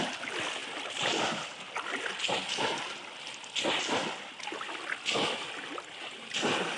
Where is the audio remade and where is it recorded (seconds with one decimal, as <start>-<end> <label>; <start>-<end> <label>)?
0.0-6.8 recorded